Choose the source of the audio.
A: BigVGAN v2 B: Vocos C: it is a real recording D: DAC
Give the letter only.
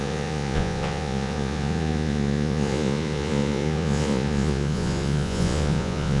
B